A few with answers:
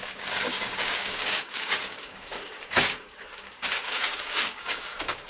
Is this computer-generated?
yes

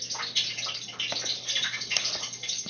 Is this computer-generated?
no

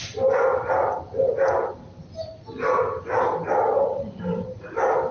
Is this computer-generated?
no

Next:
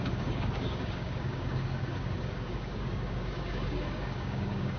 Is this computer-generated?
yes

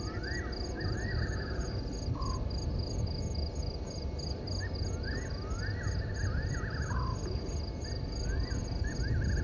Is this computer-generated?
no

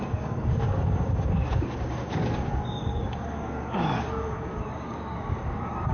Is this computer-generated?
yes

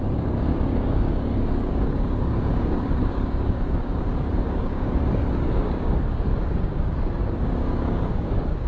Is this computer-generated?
yes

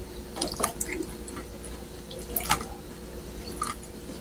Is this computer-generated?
no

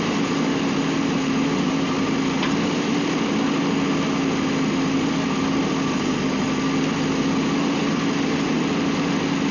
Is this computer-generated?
no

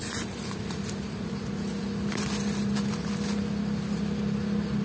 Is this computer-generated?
no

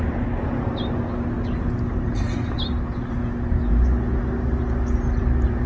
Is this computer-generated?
no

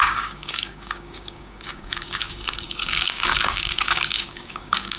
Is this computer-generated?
yes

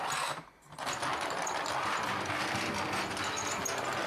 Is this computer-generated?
no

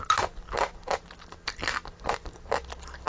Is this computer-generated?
no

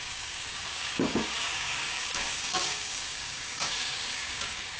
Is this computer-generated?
yes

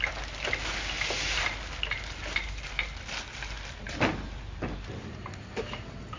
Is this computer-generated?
no